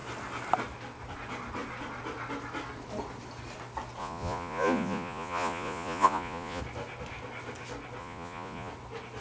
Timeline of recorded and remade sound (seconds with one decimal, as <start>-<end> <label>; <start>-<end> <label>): 0.0-4.0 recorded; 4.0-6.6 remade; 6.6-8.0 recorded; 8.0-8.7 remade; 8.7-9.2 recorded